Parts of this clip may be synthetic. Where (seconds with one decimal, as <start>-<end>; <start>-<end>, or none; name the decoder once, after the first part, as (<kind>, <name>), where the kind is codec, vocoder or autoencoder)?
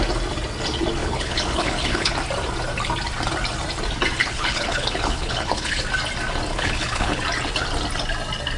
1.0-2.1 (codec, HILCodec); 4.2-5.8; 6.5-7.2